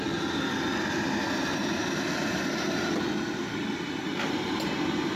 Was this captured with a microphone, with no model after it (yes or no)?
yes